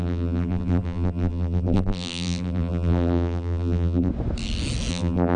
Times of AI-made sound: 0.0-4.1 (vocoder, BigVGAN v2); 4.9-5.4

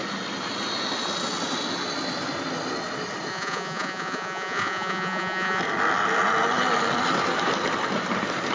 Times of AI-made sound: 3.3-5.6 (vocoder, Vocos)

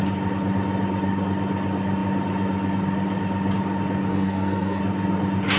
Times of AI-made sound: 4.1-4.8 (codec, SNAC)

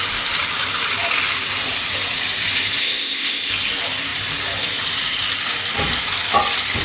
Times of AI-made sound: 2.8-3.5 (codec, ZipCodec)